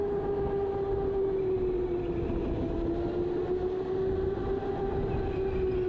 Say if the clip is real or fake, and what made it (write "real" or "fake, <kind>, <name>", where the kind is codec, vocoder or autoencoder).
real